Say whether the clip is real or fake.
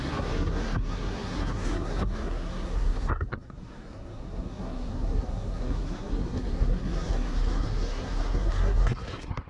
fake